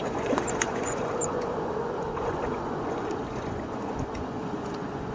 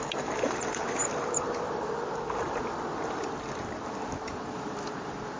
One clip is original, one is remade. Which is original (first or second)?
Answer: second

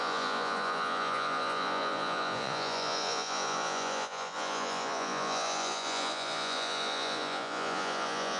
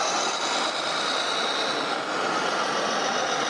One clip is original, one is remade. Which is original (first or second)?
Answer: second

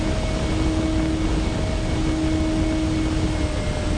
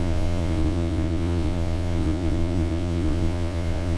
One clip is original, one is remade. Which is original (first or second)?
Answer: first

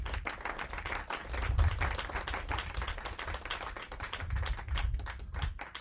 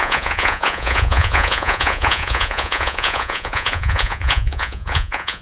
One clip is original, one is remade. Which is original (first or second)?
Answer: first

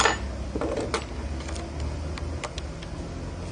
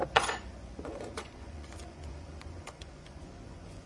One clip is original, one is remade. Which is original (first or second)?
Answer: first